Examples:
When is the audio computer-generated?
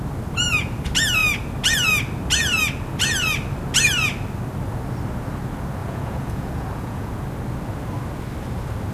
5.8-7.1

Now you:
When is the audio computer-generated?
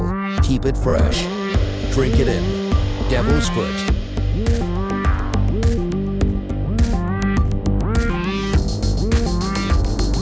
0.9-1.5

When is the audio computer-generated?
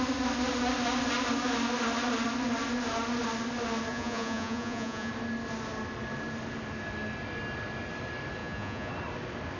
3.9-5.1; 8.4-8.9